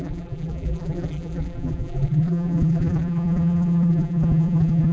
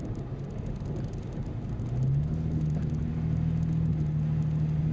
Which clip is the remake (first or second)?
first